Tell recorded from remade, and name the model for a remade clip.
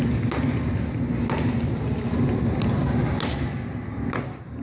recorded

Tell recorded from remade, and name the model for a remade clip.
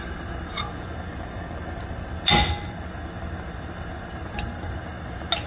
recorded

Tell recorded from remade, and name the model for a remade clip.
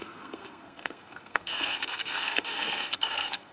remade, codec, SNAC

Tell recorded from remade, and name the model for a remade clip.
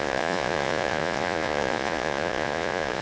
remade, vocoder, Vocos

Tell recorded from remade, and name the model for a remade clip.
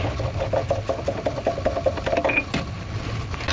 recorded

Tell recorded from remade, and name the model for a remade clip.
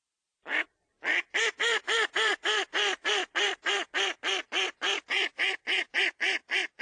remade, vocoder, BigVGAN v2